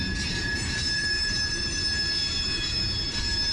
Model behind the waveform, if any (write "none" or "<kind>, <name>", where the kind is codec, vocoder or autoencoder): vocoder, BigVGAN v2